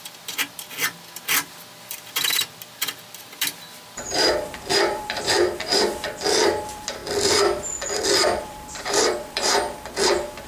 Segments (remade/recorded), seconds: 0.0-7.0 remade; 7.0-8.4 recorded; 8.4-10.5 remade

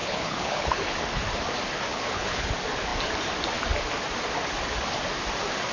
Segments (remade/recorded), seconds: 0.0-0.9 remade; 0.9-1.9 recorded; 1.9-2.5 remade; 2.5-5.7 recorded